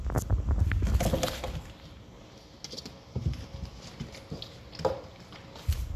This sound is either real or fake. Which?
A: real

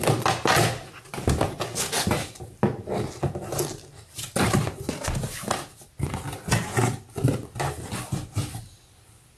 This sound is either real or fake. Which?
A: real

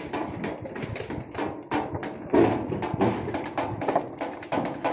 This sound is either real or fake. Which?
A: real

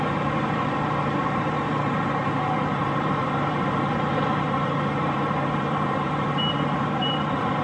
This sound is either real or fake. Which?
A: fake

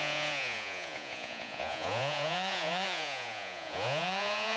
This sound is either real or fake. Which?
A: fake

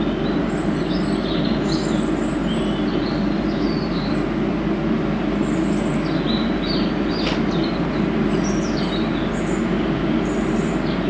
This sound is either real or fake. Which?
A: real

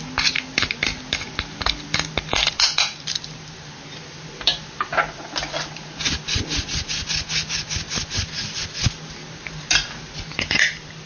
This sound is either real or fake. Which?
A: real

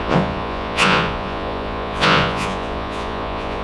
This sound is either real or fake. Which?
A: fake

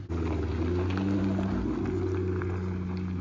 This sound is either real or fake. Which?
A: real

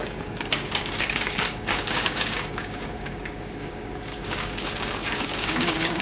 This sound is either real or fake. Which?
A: fake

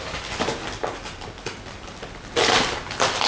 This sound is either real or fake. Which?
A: real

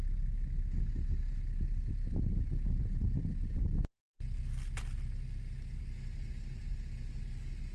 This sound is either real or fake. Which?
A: real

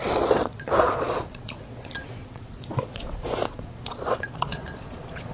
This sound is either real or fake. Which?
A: fake